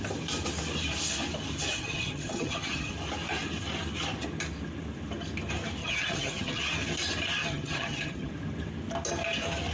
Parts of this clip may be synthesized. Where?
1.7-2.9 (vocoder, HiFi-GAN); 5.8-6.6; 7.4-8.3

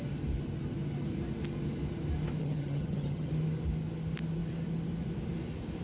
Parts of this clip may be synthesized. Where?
2.4-3.3 (vocoder, HiFi-GAN)

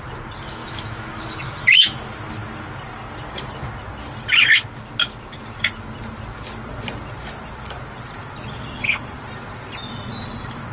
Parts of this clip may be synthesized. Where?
0.6-2.0 (autoencoder, DAC-VAE)

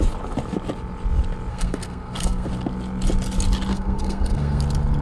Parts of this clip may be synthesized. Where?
1.5-2.5 (codec, SNAC); 3.7-4.6

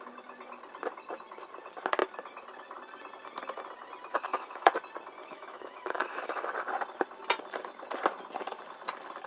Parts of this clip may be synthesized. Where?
4.1-4.7 (autoencoder, DAC-VAE); 5.2-6.5